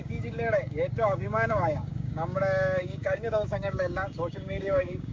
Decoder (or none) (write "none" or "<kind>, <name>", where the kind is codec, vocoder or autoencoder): codec, DAC